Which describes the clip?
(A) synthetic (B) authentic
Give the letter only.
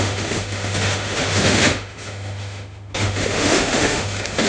A